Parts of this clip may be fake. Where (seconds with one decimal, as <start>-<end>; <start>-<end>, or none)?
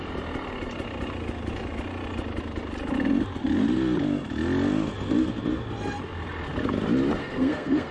7.2-7.9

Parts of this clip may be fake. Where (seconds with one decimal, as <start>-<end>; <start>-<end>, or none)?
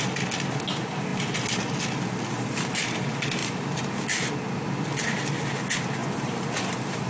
3.4-5.4; 6.0-7.1